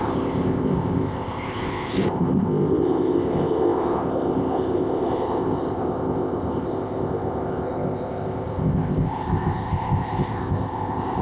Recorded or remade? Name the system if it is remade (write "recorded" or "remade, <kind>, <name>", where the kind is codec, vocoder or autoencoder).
remade, codec, ZipCodec